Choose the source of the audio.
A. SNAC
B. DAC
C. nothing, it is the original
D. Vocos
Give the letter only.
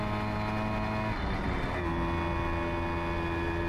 C